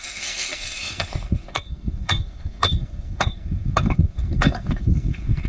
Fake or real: fake